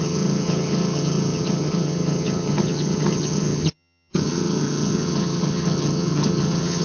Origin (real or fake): fake